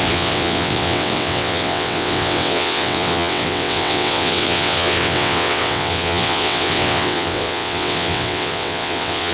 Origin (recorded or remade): remade